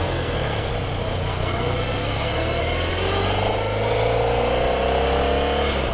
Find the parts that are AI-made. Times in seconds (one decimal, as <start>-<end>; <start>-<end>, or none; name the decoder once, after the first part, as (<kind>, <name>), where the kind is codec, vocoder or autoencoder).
0.0-0.7 (codec, SNAC); 1.3-2.6